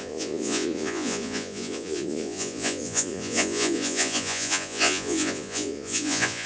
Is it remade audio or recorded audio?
remade